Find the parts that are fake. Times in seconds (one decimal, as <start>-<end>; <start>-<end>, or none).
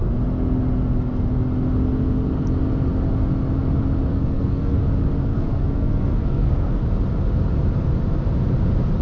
4.1-4.8; 5.3-6.8